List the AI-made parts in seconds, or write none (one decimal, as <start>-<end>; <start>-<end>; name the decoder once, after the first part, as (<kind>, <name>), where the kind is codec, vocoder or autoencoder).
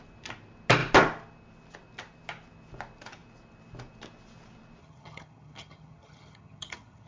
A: 4.8-7.1 (vocoder, HiFi-GAN)